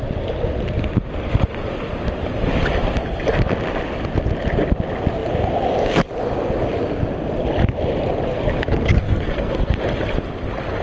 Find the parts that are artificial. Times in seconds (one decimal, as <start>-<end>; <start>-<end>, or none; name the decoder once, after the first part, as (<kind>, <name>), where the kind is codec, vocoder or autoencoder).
8.3-9.8 (codec, SNAC)